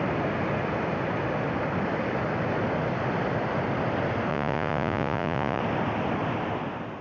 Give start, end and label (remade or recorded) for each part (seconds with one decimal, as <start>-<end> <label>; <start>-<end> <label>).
0.0-4.3 recorded; 4.3-5.6 remade; 5.6-7.0 recorded